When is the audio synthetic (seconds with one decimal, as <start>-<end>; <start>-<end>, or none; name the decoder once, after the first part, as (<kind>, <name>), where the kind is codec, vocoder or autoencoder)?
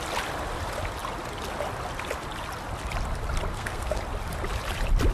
3.5-4.0 (codec, SNAC)